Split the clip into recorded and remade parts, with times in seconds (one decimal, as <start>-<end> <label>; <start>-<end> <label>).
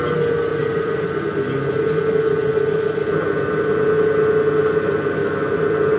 0.0-0.5 recorded; 0.5-1.2 remade; 1.2-2.4 recorded; 2.4-3.2 remade; 3.2-6.0 recorded